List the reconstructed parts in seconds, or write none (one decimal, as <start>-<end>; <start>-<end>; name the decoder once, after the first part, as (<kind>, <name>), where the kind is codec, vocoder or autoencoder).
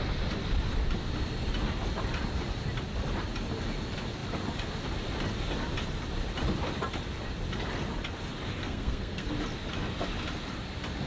8.6-9.3 (codec, SNAC)